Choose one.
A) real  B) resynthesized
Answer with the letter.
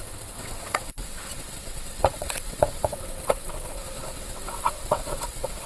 B